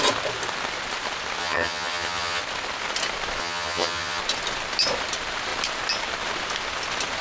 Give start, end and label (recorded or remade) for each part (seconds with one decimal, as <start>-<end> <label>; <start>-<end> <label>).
0.0-1.4 recorded; 1.4-2.4 remade; 2.4-3.4 recorded; 3.4-4.2 remade; 4.2-7.2 recorded